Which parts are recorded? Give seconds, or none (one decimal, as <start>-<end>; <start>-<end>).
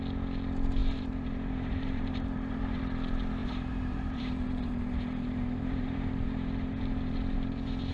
0.0-0.8; 2.8-3.4